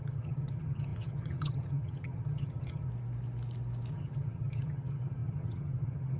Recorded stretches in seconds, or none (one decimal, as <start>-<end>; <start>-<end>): 2.9-3.9

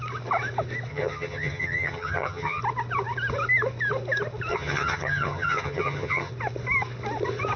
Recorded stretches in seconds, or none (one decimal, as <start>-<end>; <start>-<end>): 0.0-0.9; 2.6-4.5; 6.3-7.6

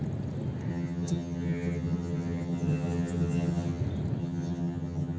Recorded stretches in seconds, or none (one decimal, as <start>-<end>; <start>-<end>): 0.0-0.7; 3.8-4.2